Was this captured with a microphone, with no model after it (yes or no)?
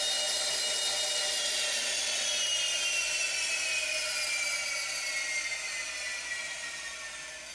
yes